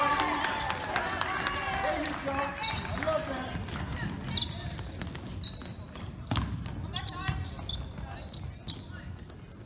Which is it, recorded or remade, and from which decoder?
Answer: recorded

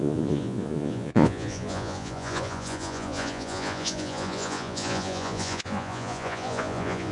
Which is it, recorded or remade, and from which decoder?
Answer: remade, vocoder, Vocos